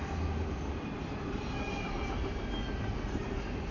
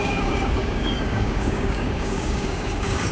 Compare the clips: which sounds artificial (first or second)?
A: second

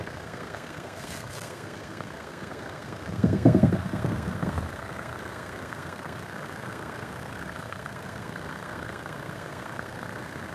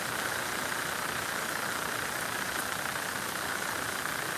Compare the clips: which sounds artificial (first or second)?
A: first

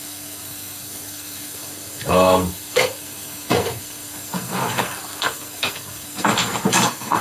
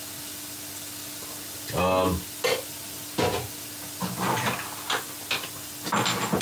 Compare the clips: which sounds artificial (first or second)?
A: first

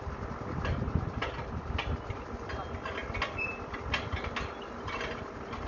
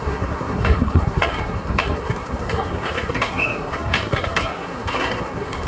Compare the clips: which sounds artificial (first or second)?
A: second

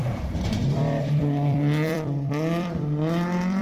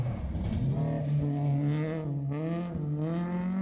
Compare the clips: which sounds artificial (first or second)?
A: first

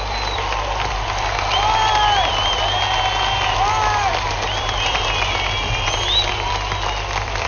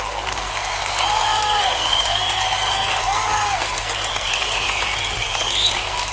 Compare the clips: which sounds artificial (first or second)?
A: second